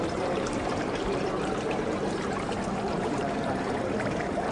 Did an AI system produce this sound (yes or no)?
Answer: yes